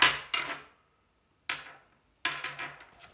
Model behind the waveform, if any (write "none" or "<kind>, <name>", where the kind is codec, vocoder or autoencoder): none